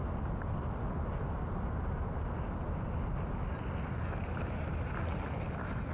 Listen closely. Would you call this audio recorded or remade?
recorded